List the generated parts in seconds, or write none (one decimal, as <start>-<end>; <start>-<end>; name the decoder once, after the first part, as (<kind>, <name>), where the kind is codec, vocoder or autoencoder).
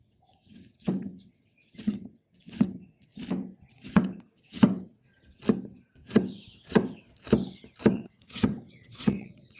0.0-3.1 (vocoder, WaveNeXt); 3.7-5.1; 5.9-7.1; 7.9-9.6